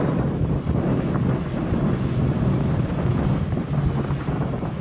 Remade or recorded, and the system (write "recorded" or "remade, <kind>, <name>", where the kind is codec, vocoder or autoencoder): recorded